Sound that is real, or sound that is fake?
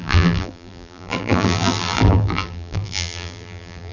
fake